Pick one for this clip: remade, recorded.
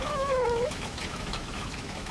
remade